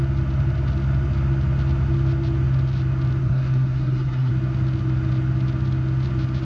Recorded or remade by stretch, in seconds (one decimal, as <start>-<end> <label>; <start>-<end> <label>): 0.0-3.2 recorded; 3.2-4.3 remade; 4.3-6.4 recorded